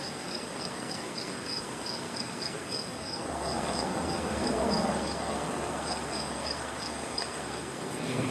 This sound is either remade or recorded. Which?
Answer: remade